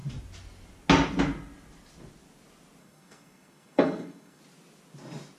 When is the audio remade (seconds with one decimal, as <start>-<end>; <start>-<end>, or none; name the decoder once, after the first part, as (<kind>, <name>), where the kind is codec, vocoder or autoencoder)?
2.8-4.4 (codec, SNAC)